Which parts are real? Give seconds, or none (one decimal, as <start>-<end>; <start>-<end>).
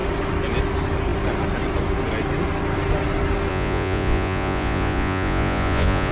0.0-3.5